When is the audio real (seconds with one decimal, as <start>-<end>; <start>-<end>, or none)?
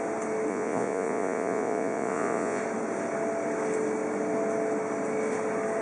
0.0-0.5; 2.6-5.8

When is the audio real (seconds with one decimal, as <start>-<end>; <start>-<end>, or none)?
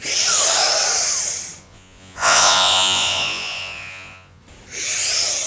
0.0-1.6; 4.4-5.5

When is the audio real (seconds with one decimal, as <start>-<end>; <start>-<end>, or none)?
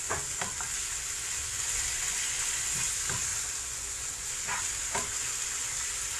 0.0-1.4; 2.5-3.3; 4.3-6.2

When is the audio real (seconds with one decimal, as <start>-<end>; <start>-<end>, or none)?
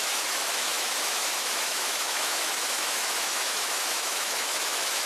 none